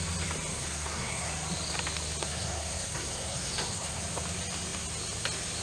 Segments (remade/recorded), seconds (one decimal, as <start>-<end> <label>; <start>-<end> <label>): 0.0-0.5 recorded; 0.5-1.3 remade; 1.3-2.2 recorded; 2.2-4.0 remade; 4.0-5.6 recorded